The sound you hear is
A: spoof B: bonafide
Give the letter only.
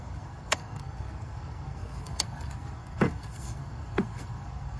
A